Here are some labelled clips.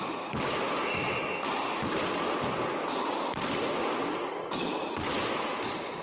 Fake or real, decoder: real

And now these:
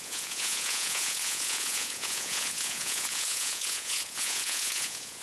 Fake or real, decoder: fake, vocoder, Vocos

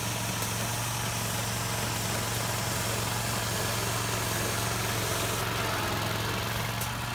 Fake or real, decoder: real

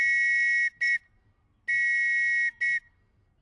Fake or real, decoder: real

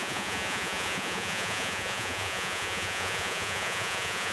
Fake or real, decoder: fake, vocoder, Vocos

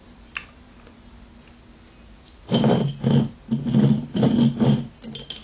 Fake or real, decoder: real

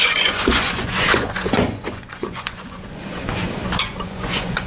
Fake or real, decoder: fake, vocoder, Vocos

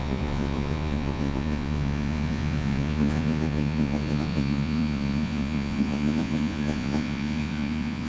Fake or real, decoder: fake, vocoder, Vocos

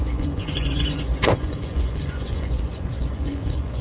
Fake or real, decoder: fake, vocoder, Vocos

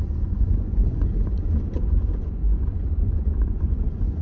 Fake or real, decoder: fake, vocoder, Vocos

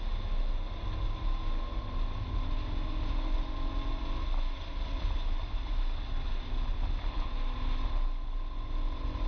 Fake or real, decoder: real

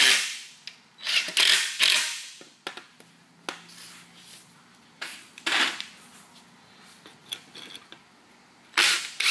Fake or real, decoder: real